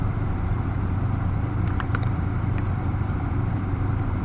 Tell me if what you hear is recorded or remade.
remade